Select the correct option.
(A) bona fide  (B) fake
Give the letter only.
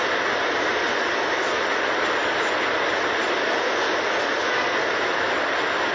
A